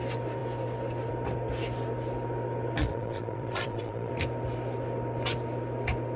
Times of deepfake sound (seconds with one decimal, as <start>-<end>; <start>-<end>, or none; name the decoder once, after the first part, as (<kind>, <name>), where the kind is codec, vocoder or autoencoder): 2.8-4.1 (vocoder, Vocos)